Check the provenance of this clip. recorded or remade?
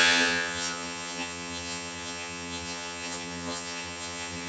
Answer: remade